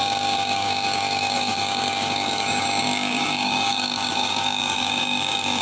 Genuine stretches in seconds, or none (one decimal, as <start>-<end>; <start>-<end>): none